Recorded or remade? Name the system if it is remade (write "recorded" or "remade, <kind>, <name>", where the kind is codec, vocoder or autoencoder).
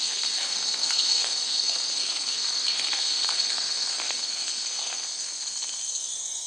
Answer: remade, codec, SNAC